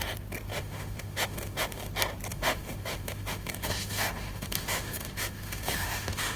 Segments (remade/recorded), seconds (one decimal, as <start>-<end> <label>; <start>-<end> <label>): 0.0-0.5 recorded; 0.5-1.9 remade; 1.9-2.3 recorded; 2.3-6.4 remade